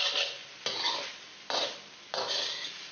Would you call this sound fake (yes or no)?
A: no